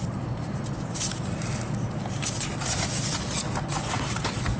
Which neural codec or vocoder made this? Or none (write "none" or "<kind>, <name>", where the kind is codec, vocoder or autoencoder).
none